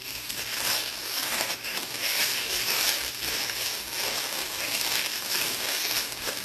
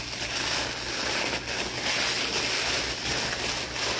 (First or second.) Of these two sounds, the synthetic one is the first